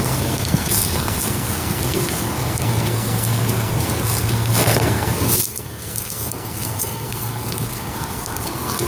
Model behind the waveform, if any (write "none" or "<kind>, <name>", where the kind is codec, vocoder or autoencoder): codec, SNAC